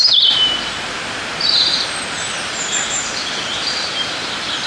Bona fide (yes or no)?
yes